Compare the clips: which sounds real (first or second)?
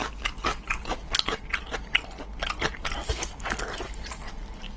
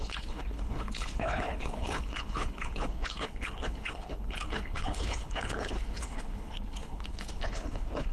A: first